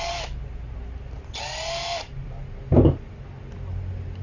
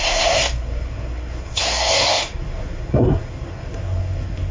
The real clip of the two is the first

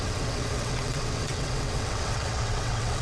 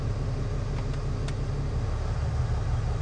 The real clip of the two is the second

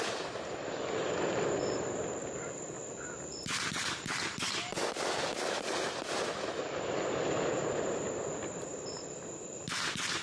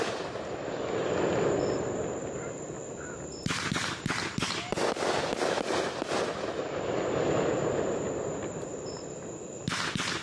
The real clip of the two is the second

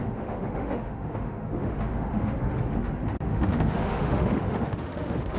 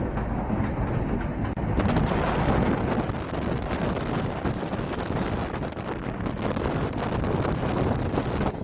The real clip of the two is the second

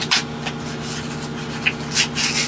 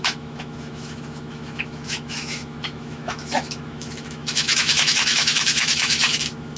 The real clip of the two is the first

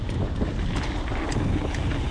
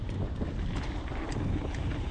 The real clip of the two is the first